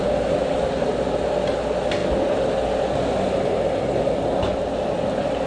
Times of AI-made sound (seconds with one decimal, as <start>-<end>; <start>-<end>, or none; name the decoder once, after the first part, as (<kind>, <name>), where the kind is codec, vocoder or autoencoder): none